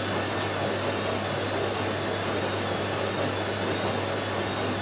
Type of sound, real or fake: real